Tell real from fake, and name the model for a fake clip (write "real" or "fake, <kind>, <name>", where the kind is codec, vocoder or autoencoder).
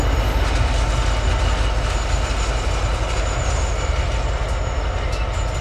real